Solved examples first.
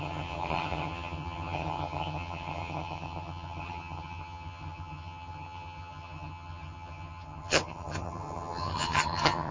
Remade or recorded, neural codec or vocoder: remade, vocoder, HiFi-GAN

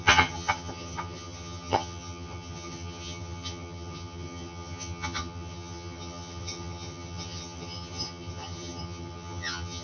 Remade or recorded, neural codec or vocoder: remade, vocoder, HiFi-GAN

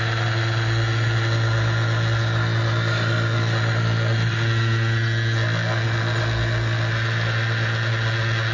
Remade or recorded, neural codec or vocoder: recorded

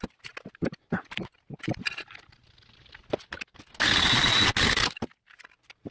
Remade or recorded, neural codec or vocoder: recorded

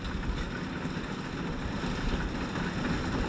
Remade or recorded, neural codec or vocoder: recorded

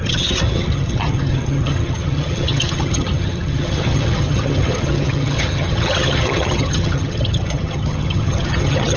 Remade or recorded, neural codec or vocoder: remade, vocoder, HiFi-GAN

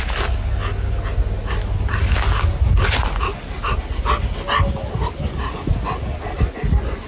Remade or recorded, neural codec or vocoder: recorded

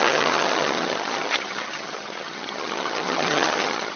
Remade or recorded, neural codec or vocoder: remade, vocoder, HiFi-GAN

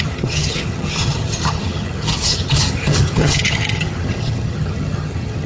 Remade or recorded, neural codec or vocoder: remade, vocoder, HiFi-GAN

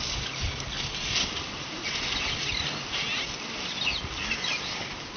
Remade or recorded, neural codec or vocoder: recorded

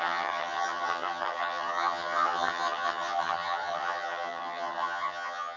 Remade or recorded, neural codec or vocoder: remade, vocoder, HiFi-GAN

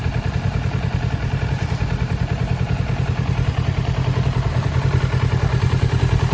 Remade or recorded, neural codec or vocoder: recorded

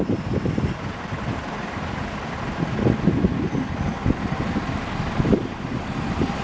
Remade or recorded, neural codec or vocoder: recorded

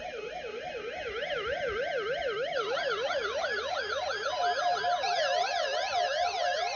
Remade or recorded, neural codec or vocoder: recorded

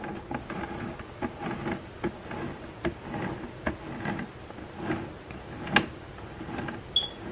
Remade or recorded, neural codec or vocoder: recorded